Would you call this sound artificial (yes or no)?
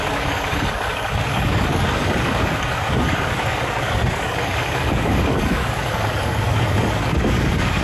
yes